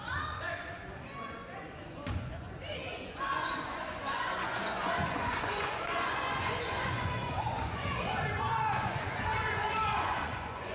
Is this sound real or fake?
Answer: fake